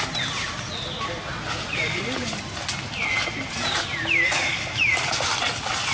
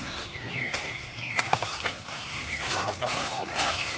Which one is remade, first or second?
second